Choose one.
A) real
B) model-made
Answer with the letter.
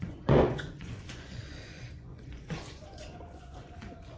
B